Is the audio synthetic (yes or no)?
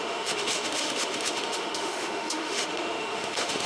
yes